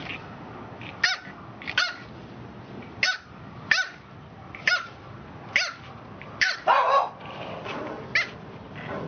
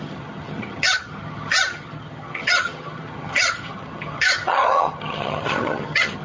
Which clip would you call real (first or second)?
first